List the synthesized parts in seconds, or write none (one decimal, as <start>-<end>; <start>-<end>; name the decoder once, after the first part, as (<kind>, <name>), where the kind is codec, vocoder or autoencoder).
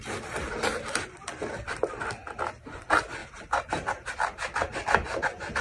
3.2-3.9 (vocoder, BigVGAN v2)